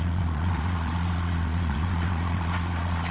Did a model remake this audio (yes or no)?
yes